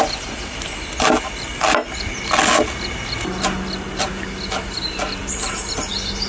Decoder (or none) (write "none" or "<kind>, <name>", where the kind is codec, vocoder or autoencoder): none